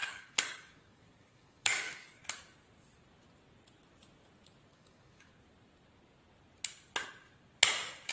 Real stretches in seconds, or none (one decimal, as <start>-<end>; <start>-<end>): 2.2-4.7; 5.3-8.1